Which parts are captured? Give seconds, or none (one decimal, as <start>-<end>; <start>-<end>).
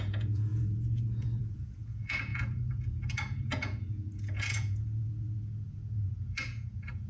none